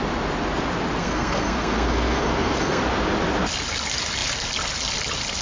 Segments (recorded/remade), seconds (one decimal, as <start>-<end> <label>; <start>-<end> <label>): 0.0-1.0 recorded; 1.0-2.8 remade; 2.8-5.4 recorded